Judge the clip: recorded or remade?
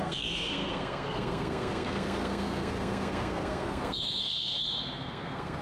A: remade